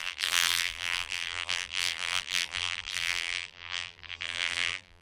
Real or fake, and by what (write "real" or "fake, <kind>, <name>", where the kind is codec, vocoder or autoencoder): fake, vocoder, BigVGAN v2